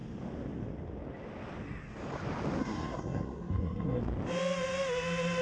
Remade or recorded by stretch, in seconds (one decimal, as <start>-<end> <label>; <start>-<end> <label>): 0.0-2.6 recorded; 2.6-4.0 remade; 4.0-5.4 recorded